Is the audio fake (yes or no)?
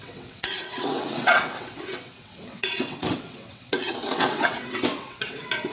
yes